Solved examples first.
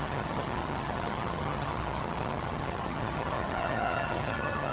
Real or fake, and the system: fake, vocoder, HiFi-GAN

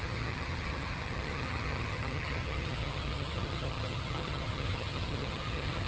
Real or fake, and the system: fake, vocoder, HiFi-GAN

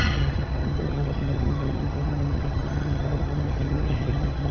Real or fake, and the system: fake, vocoder, HiFi-GAN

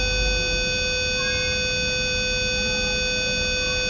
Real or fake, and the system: real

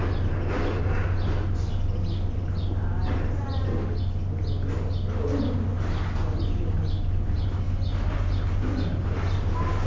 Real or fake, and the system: real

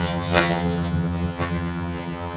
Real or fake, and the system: fake, vocoder, HiFi-GAN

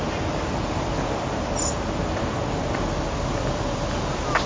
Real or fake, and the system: real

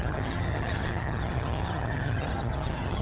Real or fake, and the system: fake, vocoder, HiFi-GAN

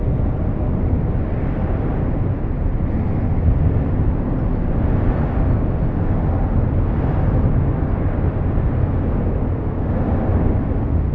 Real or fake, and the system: real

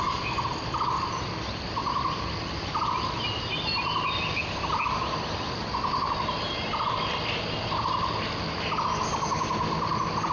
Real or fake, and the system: real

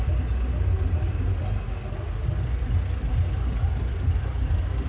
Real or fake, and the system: real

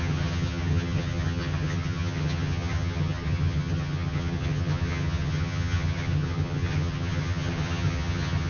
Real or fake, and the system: fake, vocoder, HiFi-GAN